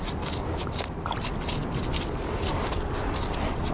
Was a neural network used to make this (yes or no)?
no